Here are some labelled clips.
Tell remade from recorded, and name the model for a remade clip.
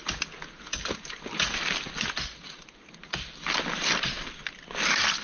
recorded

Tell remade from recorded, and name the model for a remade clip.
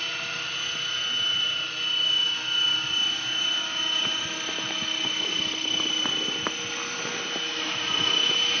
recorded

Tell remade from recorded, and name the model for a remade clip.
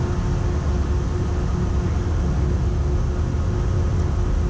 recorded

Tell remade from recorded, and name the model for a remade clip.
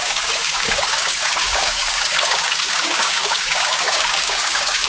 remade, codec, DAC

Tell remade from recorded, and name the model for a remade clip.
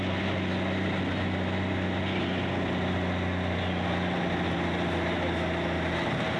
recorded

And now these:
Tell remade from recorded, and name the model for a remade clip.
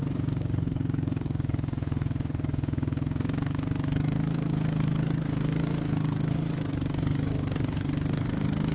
remade, codec, DAC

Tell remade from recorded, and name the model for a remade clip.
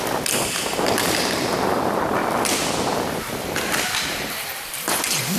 recorded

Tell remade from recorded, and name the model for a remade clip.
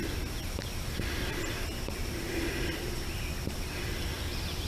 recorded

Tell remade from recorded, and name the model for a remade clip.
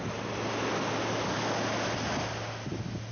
recorded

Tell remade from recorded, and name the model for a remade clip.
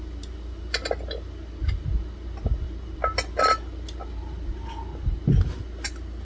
recorded